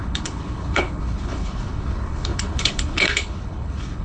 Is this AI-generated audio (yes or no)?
yes